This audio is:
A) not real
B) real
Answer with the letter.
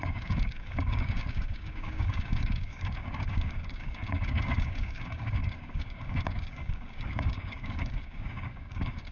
A